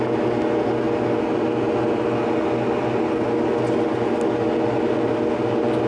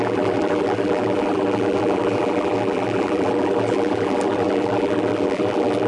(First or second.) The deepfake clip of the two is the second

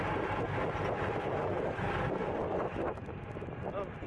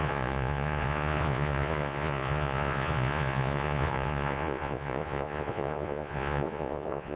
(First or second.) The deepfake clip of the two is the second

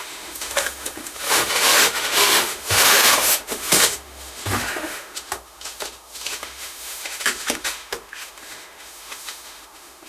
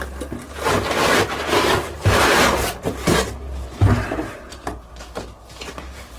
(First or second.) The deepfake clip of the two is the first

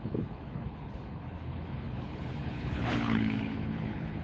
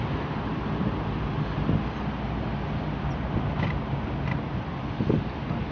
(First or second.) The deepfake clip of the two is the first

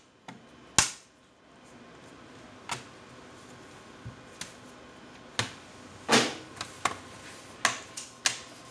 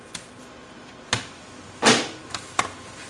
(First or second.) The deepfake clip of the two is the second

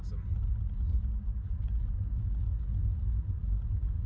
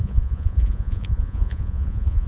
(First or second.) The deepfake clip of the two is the second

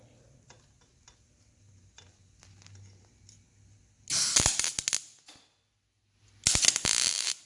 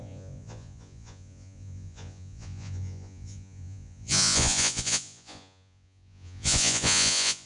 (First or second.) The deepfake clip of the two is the second